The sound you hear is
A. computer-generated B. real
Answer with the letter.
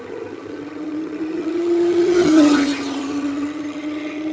A